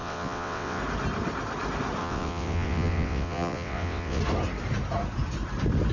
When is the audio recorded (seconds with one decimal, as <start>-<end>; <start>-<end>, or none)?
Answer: 0.8-2.0; 4.2-5.9